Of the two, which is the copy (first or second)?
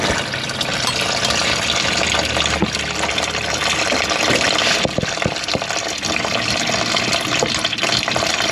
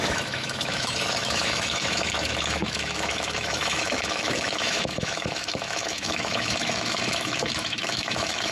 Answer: second